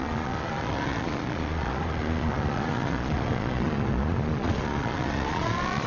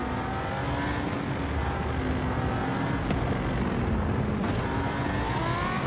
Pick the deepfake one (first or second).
first